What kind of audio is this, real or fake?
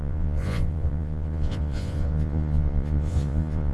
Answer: fake